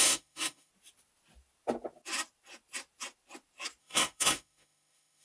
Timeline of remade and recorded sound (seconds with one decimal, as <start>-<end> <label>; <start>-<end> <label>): 0.0-0.7 remade; 0.7-3.8 recorded; 3.8-5.2 remade